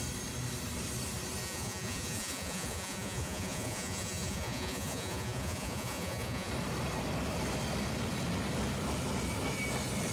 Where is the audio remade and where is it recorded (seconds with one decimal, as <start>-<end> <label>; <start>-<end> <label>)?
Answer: 0.0-1.4 recorded; 1.4-6.5 remade; 6.5-10.1 recorded